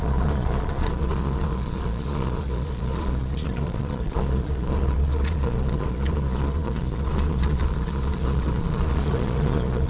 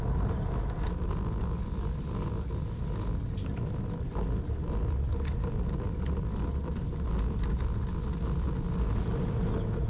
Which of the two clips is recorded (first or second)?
second